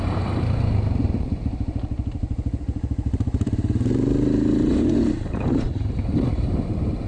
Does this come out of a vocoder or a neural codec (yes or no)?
yes